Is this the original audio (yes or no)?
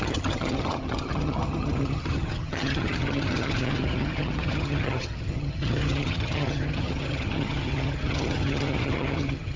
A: no